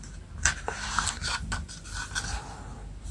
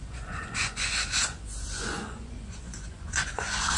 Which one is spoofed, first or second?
second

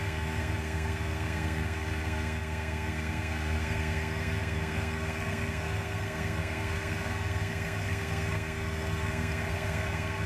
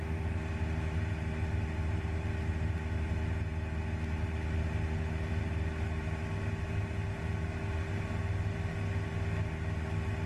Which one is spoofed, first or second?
first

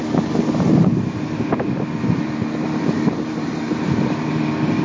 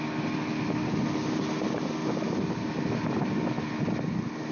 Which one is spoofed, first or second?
first